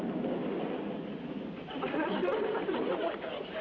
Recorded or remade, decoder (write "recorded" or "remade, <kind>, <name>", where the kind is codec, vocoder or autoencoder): recorded